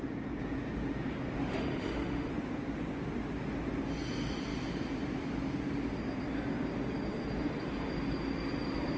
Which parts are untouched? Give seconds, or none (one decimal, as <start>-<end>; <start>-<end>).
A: 0.0-1.5; 2.3-9.0

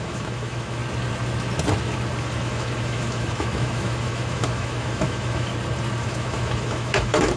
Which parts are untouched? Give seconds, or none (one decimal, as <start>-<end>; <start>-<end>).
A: 0.8-2.2; 5.5-6.0

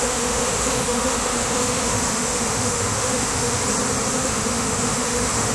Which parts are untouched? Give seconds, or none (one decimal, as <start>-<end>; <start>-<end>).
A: 3.6-4.1

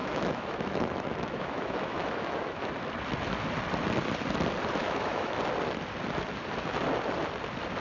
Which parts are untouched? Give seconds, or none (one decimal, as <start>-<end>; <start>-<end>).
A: 2.7-4.8; 5.4-7.8